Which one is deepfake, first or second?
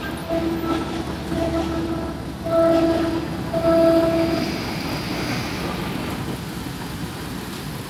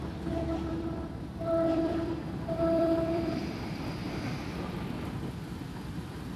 second